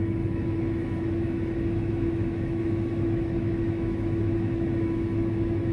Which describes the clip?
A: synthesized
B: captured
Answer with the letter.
A